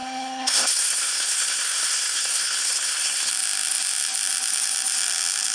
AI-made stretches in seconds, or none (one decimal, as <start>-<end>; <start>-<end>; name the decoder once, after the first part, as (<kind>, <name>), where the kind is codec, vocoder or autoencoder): 0.0-3.3 (codec, SNAC)